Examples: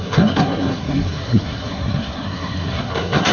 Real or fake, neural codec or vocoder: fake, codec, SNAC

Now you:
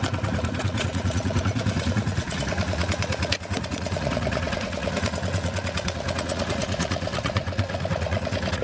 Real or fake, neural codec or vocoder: fake, vocoder, Vocos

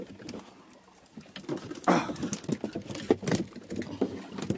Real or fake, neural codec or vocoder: real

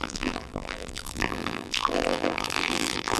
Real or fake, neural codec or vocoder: fake, vocoder, BigVGAN v2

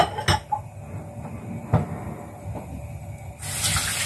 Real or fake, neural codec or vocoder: real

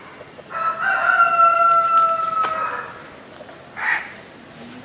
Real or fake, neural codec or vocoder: real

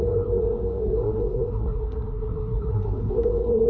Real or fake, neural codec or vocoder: fake, codec, SNAC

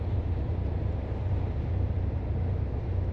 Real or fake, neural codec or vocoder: fake, vocoder, BigVGAN v2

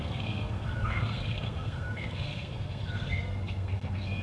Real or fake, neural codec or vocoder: fake, codec, SNAC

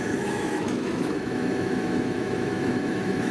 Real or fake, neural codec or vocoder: fake, autoencoder, DAC-VAE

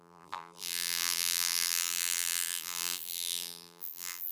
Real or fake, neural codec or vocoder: fake, vocoder, BigVGAN v2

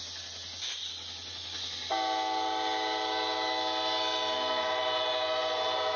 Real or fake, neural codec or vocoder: real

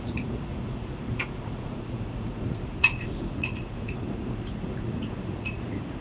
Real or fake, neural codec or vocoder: fake, vocoder, Vocos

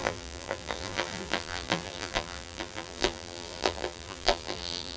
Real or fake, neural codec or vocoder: fake, vocoder, BigVGAN v2